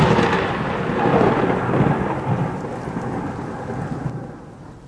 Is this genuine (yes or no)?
yes